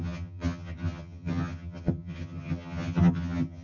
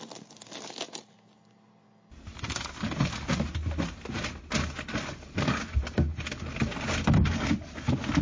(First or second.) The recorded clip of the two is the second